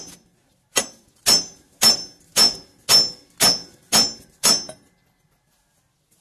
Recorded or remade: recorded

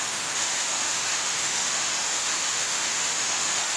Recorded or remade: remade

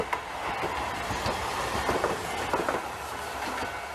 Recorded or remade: recorded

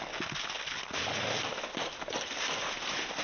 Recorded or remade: recorded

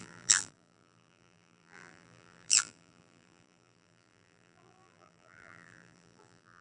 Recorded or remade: remade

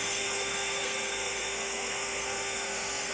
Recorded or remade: remade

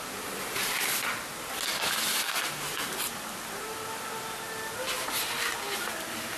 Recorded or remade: recorded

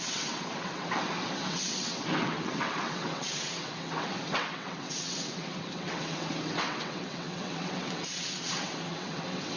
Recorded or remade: remade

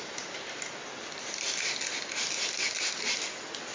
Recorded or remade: recorded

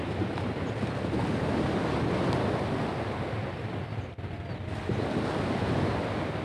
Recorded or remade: recorded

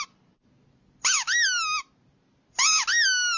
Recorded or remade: recorded